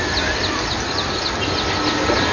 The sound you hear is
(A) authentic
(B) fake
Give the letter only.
A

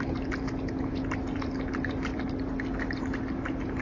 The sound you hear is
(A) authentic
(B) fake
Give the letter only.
A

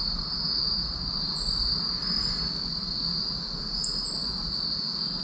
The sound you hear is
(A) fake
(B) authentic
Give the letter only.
B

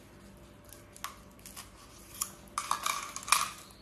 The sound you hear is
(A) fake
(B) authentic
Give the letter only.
B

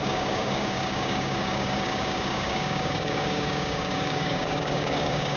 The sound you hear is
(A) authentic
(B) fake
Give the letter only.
B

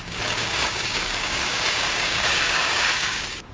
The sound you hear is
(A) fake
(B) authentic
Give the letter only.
A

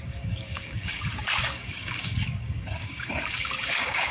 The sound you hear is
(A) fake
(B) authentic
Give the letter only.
A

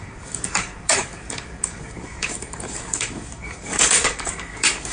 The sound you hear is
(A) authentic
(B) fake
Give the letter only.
B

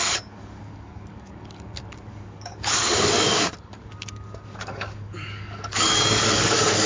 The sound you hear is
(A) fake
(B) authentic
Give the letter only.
A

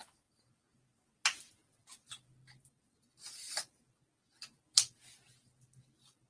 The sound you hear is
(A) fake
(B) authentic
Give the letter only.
B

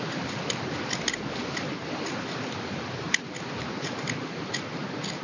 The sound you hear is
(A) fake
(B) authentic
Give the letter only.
B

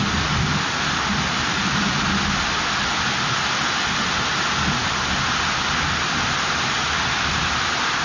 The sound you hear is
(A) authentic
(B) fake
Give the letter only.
A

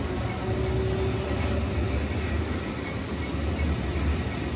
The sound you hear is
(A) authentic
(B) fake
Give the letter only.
A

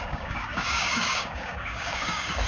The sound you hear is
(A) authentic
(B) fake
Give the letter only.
B